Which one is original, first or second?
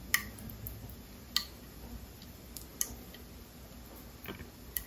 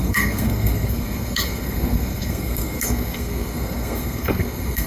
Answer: first